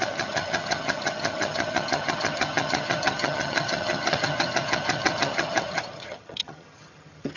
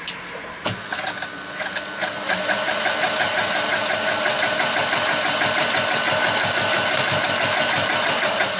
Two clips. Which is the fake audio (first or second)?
first